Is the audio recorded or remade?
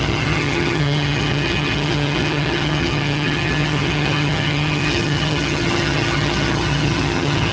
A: remade